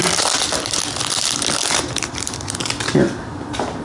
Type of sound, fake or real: real